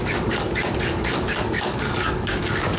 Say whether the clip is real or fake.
fake